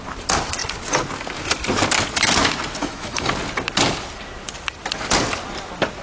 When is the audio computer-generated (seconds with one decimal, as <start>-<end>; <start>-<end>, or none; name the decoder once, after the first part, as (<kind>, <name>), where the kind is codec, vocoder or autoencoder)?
2.8-3.3 (autoencoder, DAC-VAE)